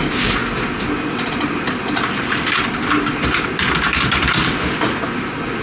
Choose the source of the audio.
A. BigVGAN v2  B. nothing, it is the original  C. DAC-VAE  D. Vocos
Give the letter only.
B